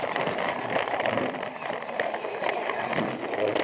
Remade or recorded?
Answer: recorded